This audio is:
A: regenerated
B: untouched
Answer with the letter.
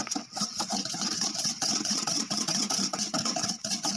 A